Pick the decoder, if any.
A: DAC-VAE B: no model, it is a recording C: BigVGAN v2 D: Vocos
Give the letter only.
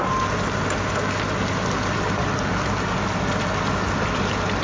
B